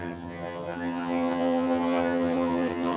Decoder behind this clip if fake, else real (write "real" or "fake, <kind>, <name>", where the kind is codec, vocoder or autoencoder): fake, vocoder, HiFi-GAN